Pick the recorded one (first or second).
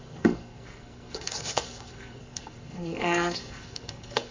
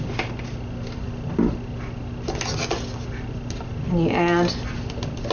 second